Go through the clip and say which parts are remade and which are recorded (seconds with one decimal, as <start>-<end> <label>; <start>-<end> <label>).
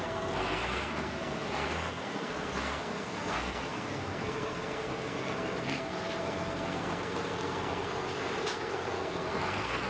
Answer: 0.0-9.9 remade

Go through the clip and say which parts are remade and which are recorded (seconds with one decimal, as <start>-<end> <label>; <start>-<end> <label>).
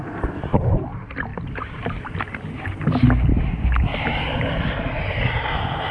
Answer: 0.0-5.9 recorded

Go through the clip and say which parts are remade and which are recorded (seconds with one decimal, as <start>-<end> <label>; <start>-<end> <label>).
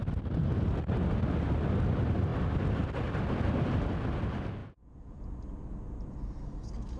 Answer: 0.0-4.6 recorded; 4.6-5.2 remade; 5.2-7.0 recorded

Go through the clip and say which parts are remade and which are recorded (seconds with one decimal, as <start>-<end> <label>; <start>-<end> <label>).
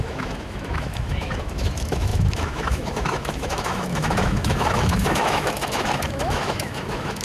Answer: 0.0-7.2 remade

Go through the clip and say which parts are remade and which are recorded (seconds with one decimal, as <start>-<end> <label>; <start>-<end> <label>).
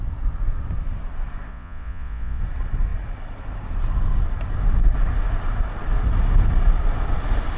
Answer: 0.0-1.5 recorded; 1.5-2.4 remade; 2.4-7.6 recorded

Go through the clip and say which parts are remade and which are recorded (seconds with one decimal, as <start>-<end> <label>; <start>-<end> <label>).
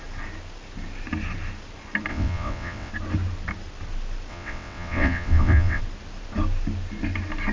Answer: 0.0-2.1 recorded; 2.1-2.9 remade; 2.9-4.3 recorded; 4.3-5.8 remade; 5.8-7.5 recorded